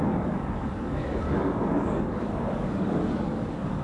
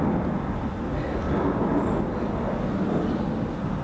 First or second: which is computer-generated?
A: first